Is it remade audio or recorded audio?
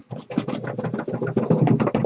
recorded